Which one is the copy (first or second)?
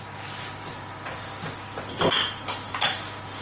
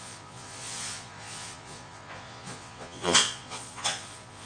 second